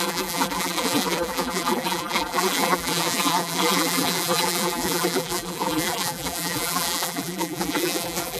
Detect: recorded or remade remade